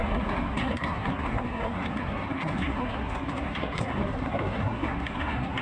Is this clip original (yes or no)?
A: no